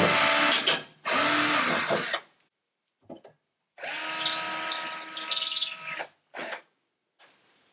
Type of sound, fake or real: real